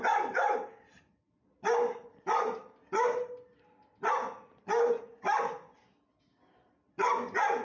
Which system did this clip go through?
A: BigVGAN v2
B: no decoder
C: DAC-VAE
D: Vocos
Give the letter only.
B